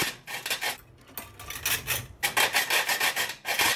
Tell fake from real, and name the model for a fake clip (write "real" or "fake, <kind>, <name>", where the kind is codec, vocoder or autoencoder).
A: real